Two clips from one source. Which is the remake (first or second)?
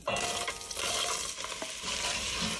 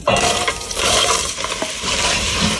second